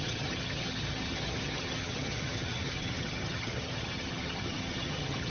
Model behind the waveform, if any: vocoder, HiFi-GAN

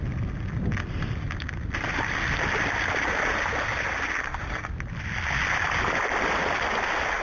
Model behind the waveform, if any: none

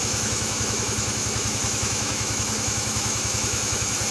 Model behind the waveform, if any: autoencoder, DAC-VAE